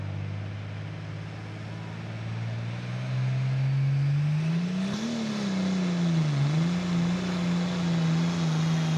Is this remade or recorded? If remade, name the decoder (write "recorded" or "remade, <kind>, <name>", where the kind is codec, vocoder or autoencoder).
recorded